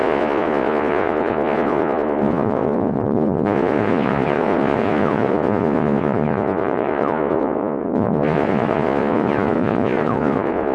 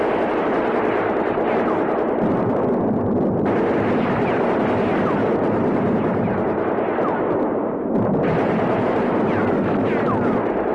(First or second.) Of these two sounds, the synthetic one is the first